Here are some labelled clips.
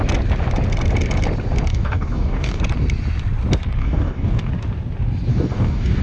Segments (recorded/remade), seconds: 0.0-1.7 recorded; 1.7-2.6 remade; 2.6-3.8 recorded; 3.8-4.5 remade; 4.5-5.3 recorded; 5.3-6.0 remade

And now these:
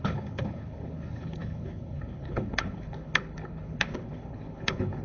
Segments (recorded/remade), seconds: 0.0-5.0 remade

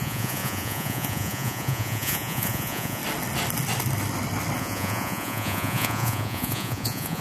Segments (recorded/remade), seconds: 0.0-3.0 remade; 3.0-4.6 recorded; 4.6-7.2 remade

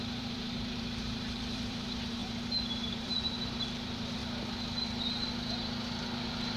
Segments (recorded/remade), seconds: 0.0-4.2 remade; 4.2-6.6 recorded

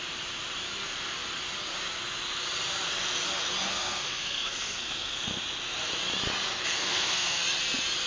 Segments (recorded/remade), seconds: 0.0-3.7 recorded; 3.7-5.4 remade; 5.4-6.8 recorded; 6.8-7.4 remade; 7.4-8.1 recorded

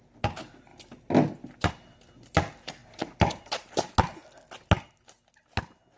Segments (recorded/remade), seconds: 0.0-2.8 recorded; 2.8-3.9 remade; 3.9-6.0 recorded

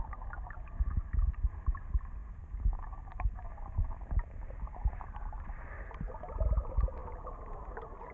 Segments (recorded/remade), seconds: 0.0-8.1 remade